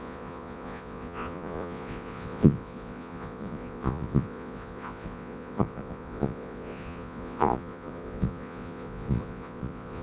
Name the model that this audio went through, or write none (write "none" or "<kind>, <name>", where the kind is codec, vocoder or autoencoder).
vocoder, Vocos